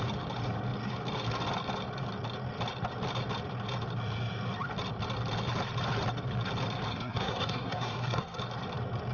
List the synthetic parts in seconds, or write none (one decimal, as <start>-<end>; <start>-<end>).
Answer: 6.9-8.4